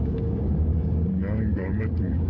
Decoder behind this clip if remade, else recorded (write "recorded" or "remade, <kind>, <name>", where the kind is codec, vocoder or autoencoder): remade, codec, DAC